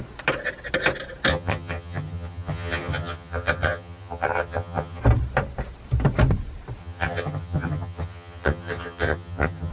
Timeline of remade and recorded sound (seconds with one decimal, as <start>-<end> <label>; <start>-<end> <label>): 0.0-1.3 recorded; 1.3-5.0 remade; 5.0-6.8 recorded; 6.8-9.7 remade